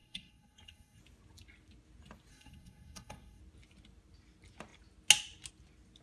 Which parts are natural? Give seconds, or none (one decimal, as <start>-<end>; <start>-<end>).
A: 1.0-2.3; 3.4-6.0